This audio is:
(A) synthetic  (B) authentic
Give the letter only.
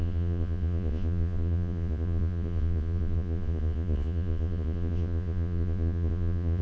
A